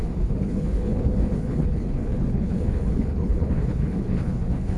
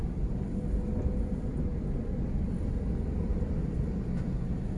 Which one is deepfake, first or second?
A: first